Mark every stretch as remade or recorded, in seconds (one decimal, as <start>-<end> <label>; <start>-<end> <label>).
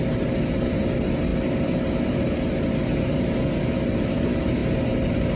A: 0.0-5.4 recorded